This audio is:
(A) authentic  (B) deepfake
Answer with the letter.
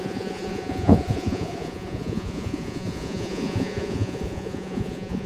B